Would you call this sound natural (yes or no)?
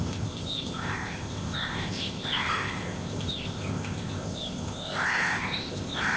no